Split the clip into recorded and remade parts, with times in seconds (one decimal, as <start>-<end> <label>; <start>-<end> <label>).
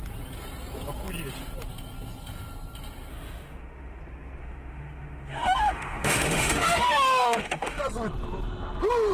0.0-3.1 recorded; 3.1-4.0 remade; 4.0-4.4 recorded; 4.4-7.8 remade; 7.8-9.1 recorded